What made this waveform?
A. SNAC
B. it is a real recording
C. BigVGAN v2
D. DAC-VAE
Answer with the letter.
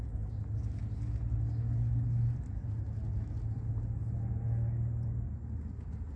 B